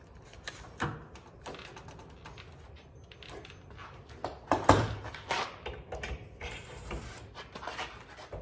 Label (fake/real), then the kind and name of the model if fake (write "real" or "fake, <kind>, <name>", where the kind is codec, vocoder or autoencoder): real